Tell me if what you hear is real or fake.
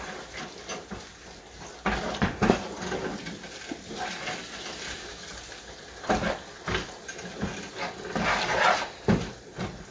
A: real